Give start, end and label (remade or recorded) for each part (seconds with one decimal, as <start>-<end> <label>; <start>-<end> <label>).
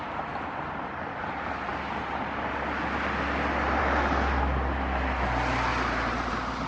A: 0.0-5.7 recorded; 5.7-6.3 remade; 6.3-6.7 recorded